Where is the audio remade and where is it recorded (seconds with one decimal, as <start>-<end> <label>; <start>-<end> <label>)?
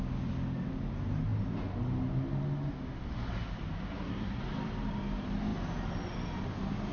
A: 0.0-3.9 recorded; 3.9-4.4 remade; 4.4-6.9 recorded